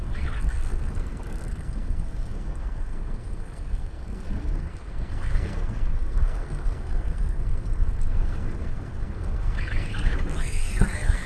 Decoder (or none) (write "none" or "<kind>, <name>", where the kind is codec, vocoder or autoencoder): codec, SNAC